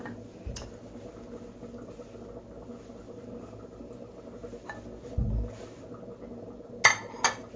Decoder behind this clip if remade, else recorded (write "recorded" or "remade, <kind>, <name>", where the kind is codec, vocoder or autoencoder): recorded